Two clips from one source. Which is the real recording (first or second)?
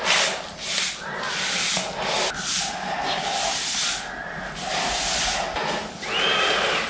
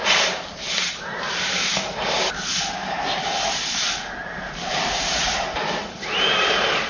first